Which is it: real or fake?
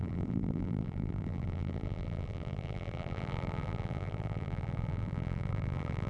fake